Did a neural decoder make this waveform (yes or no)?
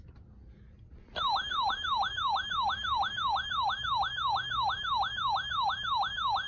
no